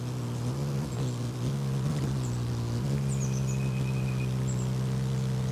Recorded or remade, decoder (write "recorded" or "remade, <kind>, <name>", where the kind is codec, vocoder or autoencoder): recorded